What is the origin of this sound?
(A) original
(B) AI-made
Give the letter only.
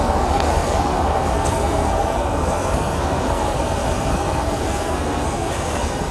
B